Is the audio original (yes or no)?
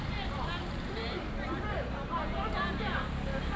yes